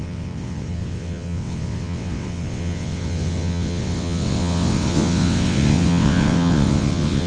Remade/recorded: remade